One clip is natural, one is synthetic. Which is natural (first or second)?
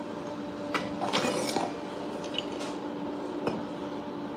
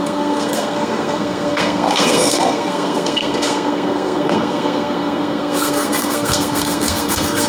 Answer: first